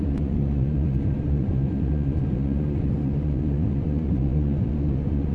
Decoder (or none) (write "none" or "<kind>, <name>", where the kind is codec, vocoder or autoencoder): vocoder, Vocos